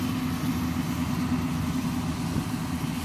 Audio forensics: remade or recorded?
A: recorded